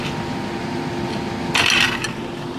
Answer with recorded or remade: recorded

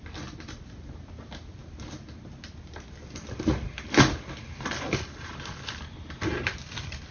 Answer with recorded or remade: recorded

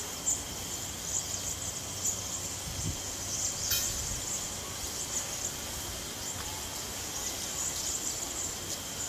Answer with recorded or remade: recorded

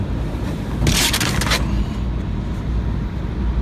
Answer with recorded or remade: recorded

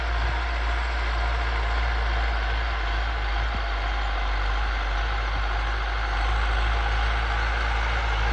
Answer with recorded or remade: recorded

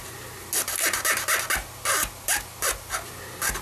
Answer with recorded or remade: recorded